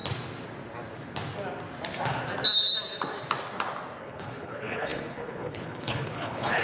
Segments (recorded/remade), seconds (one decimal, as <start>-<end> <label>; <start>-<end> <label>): 0.0-4.0 recorded; 4.0-6.6 remade